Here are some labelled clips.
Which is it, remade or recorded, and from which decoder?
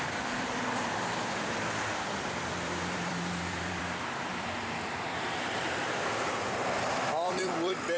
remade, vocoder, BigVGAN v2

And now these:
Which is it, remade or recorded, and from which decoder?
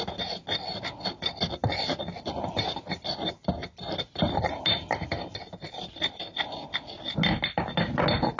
recorded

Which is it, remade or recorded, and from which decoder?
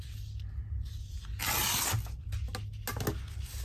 recorded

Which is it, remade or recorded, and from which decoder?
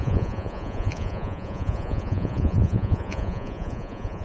remade, vocoder, Vocos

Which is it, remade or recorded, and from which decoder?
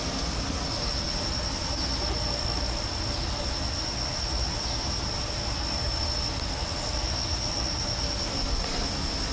recorded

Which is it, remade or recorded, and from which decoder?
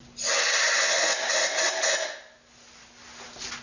recorded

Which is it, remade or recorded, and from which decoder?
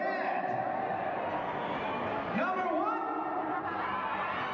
recorded